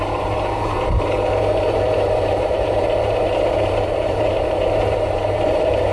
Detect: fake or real fake